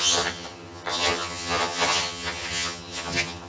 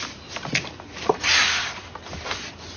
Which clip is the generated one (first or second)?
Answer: first